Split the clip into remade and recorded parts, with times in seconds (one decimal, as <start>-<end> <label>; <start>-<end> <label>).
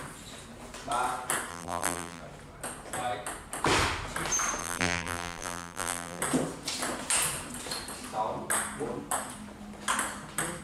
0.0-1.5 recorded; 1.5-2.2 remade; 2.2-4.6 recorded; 4.6-6.2 remade; 6.2-10.6 recorded